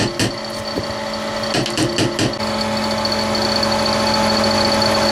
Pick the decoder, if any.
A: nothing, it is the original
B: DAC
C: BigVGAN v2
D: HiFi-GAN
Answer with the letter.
A